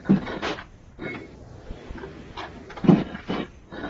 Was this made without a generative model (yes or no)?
yes